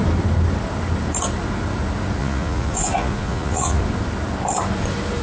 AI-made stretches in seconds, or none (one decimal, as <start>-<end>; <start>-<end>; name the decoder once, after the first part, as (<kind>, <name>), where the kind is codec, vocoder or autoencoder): 2.2-3.8 (vocoder, Vocos)